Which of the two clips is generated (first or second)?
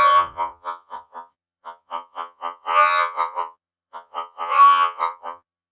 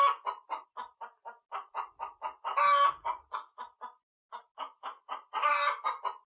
first